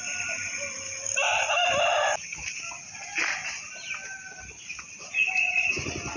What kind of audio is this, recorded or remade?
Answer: recorded